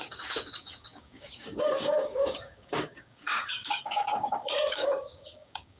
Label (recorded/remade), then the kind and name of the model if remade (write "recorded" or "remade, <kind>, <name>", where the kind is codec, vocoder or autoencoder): remade, codec, DAC